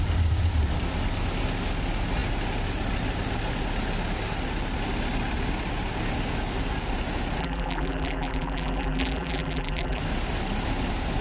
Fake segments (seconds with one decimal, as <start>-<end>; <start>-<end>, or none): 7.4-10.0

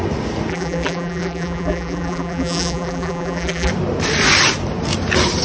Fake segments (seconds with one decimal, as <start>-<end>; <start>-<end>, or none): 0.5-3.7

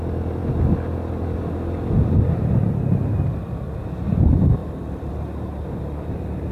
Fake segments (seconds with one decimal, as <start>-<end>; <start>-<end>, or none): 4.6-5.1

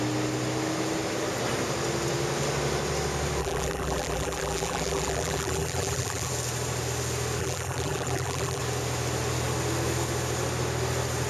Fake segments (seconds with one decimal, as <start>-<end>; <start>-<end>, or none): 3.4-6.3; 7.4-8.6